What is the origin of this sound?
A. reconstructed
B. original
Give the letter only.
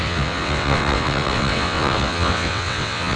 A